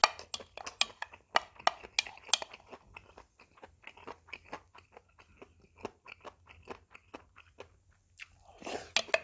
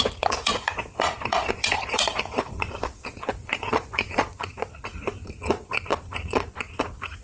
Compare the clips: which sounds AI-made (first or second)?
second